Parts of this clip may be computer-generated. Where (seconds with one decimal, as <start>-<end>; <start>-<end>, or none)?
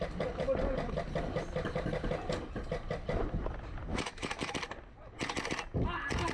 3.9-4.5